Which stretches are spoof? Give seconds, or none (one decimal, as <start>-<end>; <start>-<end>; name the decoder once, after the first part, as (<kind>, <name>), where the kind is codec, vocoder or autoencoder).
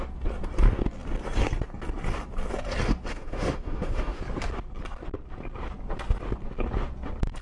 3.1-4.2 (autoencoder, DAC-VAE)